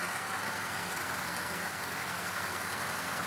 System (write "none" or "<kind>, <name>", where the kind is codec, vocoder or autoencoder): codec, SNAC